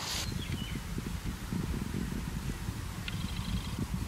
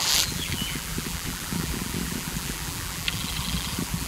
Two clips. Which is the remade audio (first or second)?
second